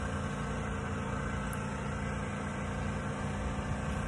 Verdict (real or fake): real